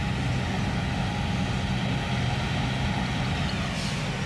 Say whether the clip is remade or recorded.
recorded